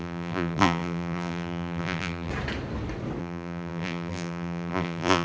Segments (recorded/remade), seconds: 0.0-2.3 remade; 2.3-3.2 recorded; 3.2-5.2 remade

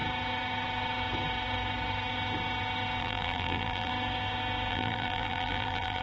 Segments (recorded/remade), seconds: 0.0-3.0 recorded; 3.0-3.9 remade; 3.9-4.7 recorded; 4.7-6.0 remade

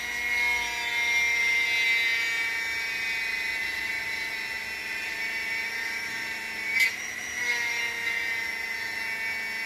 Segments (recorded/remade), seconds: 0.0-3.6 recorded; 3.6-4.3 remade; 4.3-4.8 recorded; 4.8-8.2 remade; 8.2-9.7 recorded

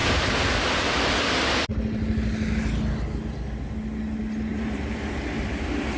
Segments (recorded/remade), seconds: 0.0-4.5 recorded; 4.5-5.5 remade; 5.5-6.0 recorded

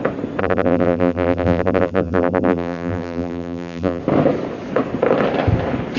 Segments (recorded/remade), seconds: 0.0-0.4 recorded; 0.4-4.0 remade; 4.0-6.0 recorded